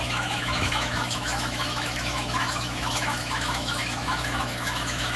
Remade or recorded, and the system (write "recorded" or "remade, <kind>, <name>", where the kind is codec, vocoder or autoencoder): remade, autoencoder, DAC-VAE